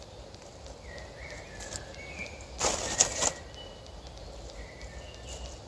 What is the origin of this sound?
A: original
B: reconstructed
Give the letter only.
A